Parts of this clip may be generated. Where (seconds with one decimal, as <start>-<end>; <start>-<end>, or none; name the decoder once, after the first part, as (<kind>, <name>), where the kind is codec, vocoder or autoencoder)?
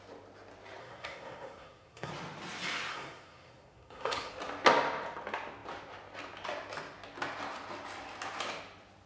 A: 0.8-2.1 (codec, SNAC); 2.9-4.3